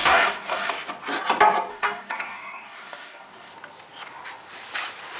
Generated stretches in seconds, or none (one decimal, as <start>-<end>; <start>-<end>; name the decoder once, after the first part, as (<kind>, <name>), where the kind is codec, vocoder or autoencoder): 0.0-0.7 (codec, DAC); 1.7-3.5